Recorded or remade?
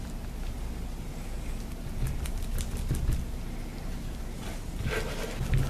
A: recorded